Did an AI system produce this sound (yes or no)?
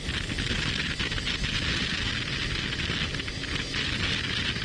no